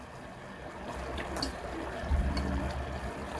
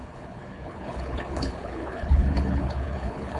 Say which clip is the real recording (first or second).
first